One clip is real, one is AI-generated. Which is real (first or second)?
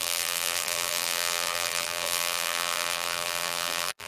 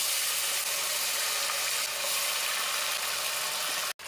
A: second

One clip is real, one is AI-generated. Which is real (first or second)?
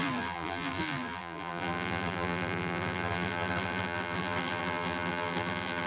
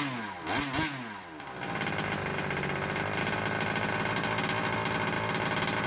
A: second